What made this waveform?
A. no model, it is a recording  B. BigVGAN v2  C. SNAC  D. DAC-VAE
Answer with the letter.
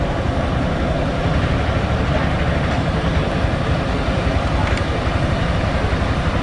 A